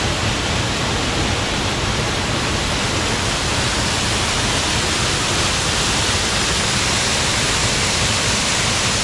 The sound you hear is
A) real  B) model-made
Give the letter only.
A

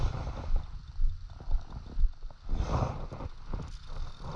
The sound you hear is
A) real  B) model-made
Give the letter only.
A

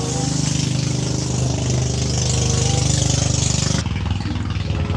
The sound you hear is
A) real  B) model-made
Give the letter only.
A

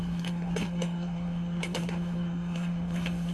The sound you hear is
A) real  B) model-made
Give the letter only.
B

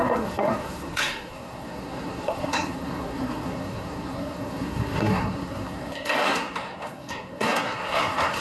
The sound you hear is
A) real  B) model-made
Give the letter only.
B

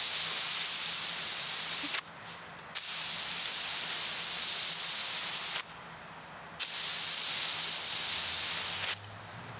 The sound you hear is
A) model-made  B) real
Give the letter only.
B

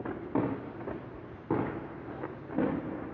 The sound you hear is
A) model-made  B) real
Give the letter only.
B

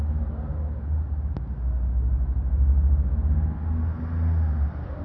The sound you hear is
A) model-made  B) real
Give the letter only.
B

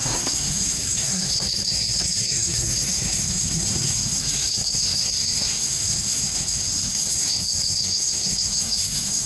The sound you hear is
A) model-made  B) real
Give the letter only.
A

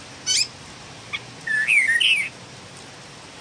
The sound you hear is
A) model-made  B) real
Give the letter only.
B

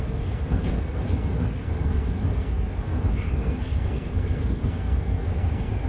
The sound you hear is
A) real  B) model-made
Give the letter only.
B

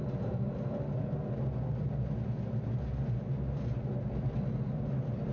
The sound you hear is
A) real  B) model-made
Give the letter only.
A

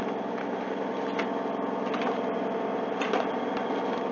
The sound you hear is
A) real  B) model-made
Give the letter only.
A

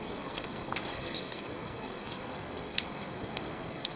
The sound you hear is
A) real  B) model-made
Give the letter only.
B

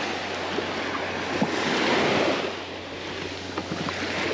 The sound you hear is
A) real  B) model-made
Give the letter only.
A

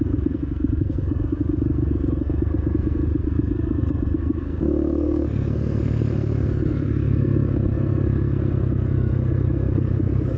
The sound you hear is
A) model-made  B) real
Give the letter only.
A